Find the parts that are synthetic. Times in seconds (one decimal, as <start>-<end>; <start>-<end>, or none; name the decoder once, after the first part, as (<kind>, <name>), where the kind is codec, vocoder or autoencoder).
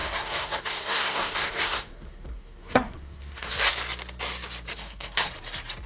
0.0-3.5 (codec, SNAC); 4.7-5.3